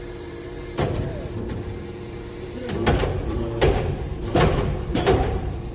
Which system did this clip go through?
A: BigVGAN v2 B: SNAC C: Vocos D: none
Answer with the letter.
A